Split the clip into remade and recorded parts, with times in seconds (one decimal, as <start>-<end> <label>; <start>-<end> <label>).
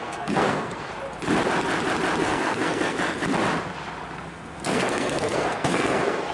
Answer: 0.0-0.9 remade; 0.9-2.2 recorded; 2.2-3.2 remade; 3.2-4.3 recorded; 4.3-6.3 remade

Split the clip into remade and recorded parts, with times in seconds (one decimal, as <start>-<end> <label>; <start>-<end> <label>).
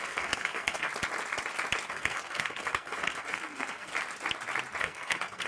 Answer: 0.0-0.9 remade; 0.9-1.9 recorded; 1.9-3.9 remade; 3.9-4.8 recorded; 4.8-5.5 remade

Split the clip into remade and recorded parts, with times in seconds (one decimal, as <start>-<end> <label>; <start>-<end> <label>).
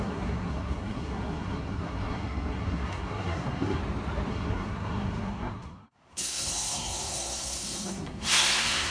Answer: 0.0-3.8 remade; 3.8-4.3 recorded; 4.3-8.9 remade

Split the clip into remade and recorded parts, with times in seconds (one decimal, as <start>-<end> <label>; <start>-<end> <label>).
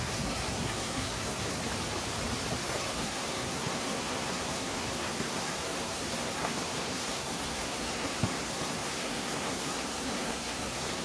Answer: 0.0-1.6 remade; 1.6-2.6 recorded; 2.6-11.0 remade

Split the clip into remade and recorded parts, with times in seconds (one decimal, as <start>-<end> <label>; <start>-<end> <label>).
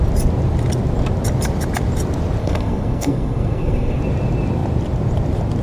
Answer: 0.0-2.4 recorded; 2.4-4.0 remade; 4.0-5.6 recorded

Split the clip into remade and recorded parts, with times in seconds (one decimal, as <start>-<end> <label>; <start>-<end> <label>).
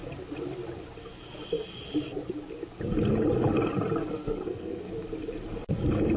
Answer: 0.0-4.0 recorded; 4.0-4.9 remade; 4.9-6.2 recorded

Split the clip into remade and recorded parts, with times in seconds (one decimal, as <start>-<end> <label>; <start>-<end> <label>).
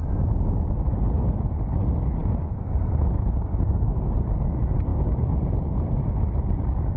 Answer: 0.0-7.0 recorded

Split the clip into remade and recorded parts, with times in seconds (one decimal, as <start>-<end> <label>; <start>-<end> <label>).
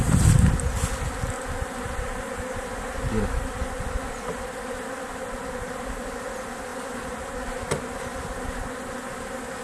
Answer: 0.0-9.6 recorded